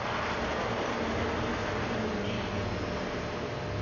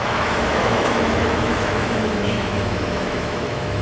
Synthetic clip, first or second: second